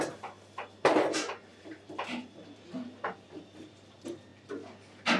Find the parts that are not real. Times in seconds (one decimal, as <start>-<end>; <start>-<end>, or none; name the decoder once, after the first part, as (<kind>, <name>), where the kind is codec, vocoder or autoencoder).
1.5-3.7 (vocoder, BigVGAN v2)